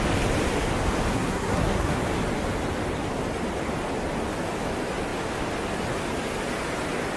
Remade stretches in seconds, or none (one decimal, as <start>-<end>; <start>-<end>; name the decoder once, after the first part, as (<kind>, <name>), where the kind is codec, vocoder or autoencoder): 1.1-2.0 (codec, SNAC)